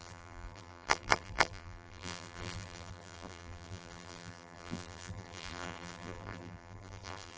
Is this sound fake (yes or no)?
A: yes